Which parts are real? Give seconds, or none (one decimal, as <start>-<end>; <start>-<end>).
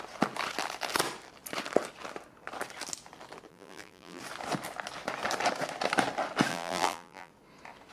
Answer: 0.0-3.5; 4.2-6.5; 7.3-7.9